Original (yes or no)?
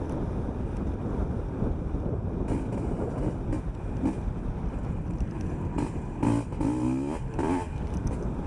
yes